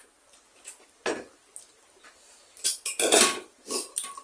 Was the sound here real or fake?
real